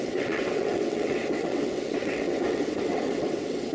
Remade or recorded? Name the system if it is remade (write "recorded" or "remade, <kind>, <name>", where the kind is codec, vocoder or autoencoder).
remade, vocoder, WaveNeXt